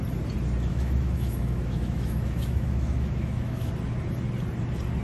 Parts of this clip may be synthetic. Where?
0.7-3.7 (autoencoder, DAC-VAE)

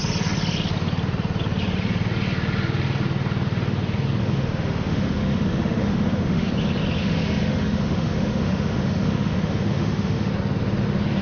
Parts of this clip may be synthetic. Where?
4.2-6.5 (autoencoder, DAC-VAE); 7.0-10.3

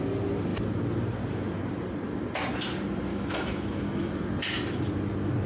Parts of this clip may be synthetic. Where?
3.1-4.2 (autoencoder, DAC-VAE)

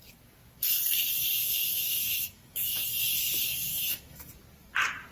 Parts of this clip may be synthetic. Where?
1.4-2.9 (autoencoder, DAC-VAE); 3.5-4.3

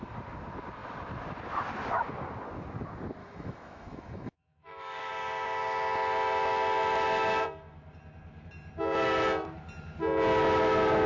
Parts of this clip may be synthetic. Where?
3.2-5.1 (autoencoder, DAC-VAE)

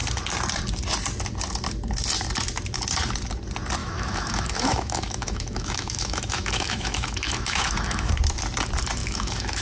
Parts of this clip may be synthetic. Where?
3.8-8.1 (autoencoder, DAC-VAE); 9.0-9.6

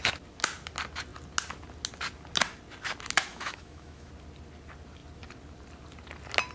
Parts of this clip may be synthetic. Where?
3.3-4.1 (autoencoder, DAC-VAE)

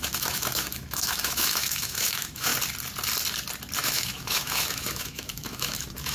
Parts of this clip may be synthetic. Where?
0.0-2.5 (autoencoder, DAC-VAE); 3.8-6.1